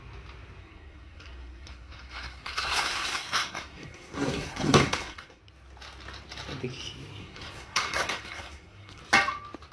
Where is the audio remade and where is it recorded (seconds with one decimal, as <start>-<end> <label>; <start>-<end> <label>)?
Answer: 0.0-0.6 recorded; 0.6-5.4 remade; 5.4-7.2 recorded; 7.2-9.0 remade; 9.0-9.7 recorded